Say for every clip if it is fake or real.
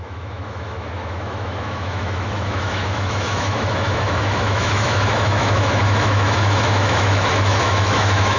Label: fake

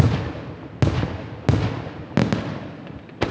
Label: real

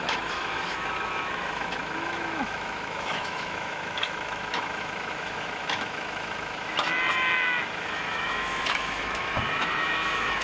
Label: fake